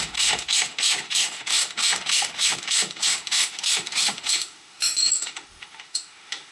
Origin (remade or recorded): remade